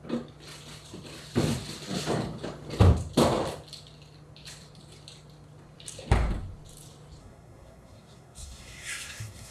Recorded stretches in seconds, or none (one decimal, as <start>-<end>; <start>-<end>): 0.0-7.2

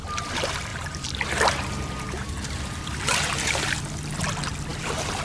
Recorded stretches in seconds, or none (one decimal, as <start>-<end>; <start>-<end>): 0.0-0.7; 3.8-5.2

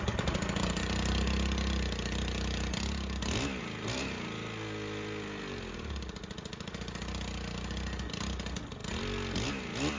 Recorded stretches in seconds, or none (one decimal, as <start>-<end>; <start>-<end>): 0.0-10.0

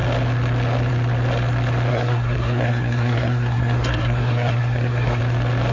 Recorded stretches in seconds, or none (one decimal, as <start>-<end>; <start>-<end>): 0.0-1.9; 5.2-5.7

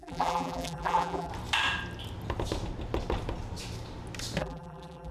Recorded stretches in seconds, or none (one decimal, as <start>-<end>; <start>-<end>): 1.3-4.4

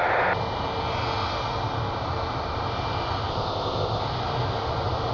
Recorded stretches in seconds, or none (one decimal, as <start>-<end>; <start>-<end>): 0.0-3.3; 4.0-5.1

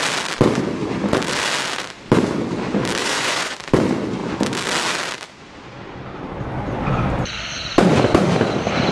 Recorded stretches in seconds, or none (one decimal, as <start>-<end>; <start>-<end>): 0.0-3.0; 3.6-8.9

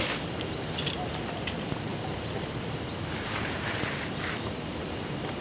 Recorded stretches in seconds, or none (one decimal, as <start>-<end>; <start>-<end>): 0.0-5.4